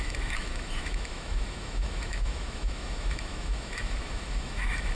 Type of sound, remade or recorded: remade